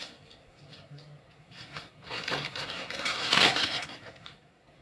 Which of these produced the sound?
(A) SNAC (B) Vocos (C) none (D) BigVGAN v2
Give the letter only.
A